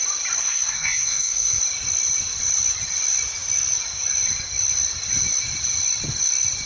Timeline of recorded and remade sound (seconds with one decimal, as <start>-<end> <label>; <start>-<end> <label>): 0.0-0.4 recorded; 0.4-1.6 remade; 1.6-6.7 recorded